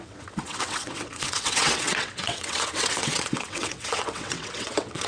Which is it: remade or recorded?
remade